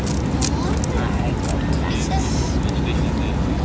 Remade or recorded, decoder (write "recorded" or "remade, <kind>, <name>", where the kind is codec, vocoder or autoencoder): recorded